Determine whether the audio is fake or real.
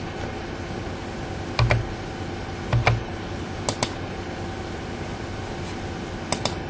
real